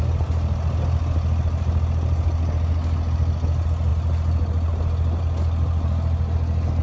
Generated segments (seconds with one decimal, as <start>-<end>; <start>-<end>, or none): none